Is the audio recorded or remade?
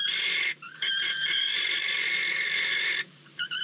remade